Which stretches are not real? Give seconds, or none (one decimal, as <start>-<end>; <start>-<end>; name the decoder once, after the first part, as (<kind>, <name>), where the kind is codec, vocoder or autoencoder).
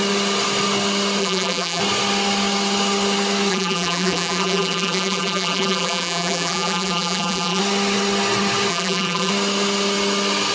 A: 1.2-1.8 (vocoder, BigVGAN v2); 3.5-7.6; 8.7-9.3